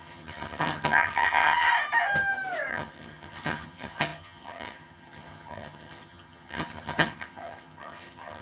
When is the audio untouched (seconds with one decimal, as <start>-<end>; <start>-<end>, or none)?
1.7-2.7